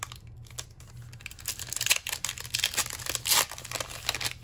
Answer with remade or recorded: recorded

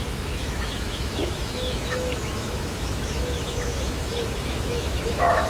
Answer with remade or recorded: remade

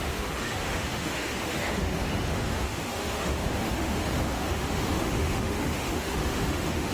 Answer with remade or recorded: remade